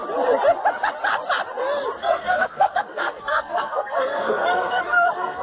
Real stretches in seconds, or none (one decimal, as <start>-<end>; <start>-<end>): 0.0-2.0

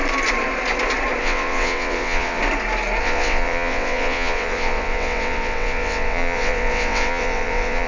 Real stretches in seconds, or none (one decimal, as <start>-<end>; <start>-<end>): 0.0-1.2; 2.4-3.0

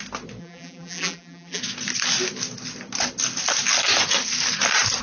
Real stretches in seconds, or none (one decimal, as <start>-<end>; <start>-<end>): 0.0-0.4; 1.6-5.0

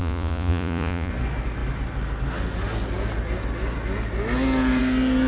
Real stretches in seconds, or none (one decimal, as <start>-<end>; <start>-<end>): 1.1-5.3